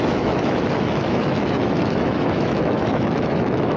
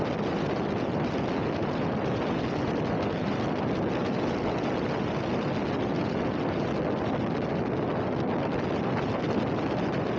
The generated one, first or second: first